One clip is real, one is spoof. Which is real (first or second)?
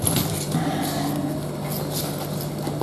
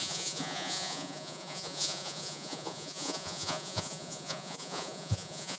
first